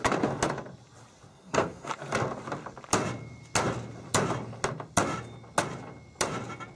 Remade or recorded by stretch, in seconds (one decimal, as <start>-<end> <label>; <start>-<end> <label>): 0.0-1.3 recorded; 1.3-1.9 remade; 1.9-6.8 recorded